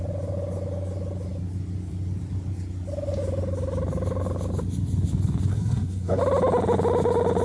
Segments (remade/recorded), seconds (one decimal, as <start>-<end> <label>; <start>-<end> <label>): 0.0-5.5 recorded; 5.5-6.2 remade; 6.2-7.4 recorded